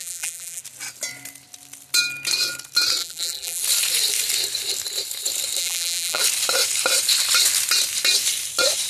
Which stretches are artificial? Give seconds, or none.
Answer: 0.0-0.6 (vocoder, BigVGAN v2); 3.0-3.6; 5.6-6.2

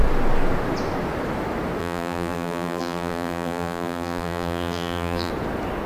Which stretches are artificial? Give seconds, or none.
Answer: 1.8-5.3 (vocoder, BigVGAN v2)

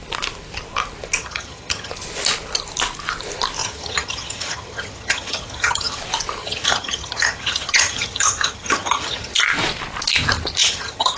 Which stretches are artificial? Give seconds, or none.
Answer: 1.2-1.9 (vocoder, HiFi-GAN); 3.6-6.0; 6.4-9.3; 10.6-11.2

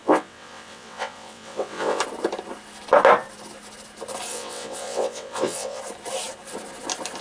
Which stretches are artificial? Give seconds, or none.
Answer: 0.0-2.0 (vocoder, WaveNeXt); 4.3-5.8

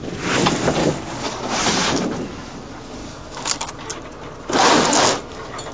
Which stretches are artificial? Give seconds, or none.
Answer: 0.8-1.4 (codec, DAC); 3.0-3.7

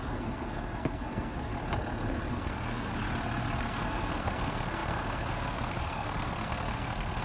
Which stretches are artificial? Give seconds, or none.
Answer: 0.0-1.5 (codec, SNAC); 2.3-2.9; 3.6-7.2

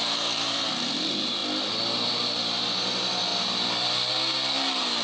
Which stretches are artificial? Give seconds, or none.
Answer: 0.0-1.4 (vocoder, BigVGAN v2); 2.1-3.3; 4.1-5.0

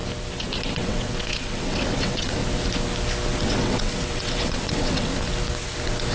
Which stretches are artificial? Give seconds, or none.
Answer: 0.7-2.4 (vocoder, WaveNeXt); 3.5-5.1